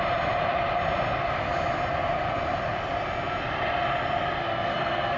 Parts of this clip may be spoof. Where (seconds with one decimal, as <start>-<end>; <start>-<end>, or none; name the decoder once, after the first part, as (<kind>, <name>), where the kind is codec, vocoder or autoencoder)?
4.4-5.2 (codec, SNAC)